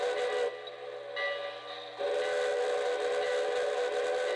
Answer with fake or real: real